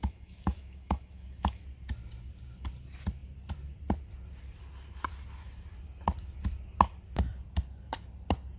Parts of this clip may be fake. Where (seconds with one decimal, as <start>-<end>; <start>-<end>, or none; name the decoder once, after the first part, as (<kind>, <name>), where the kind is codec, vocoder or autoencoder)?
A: 0.0-1.6 (autoencoder, DAC-VAE)